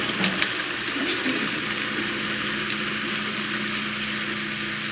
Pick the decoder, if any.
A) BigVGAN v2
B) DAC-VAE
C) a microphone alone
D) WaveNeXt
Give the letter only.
C